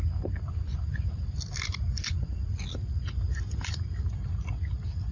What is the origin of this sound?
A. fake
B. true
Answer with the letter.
B